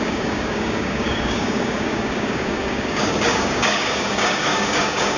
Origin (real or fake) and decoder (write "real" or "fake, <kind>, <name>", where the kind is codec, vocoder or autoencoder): fake, codec, DAC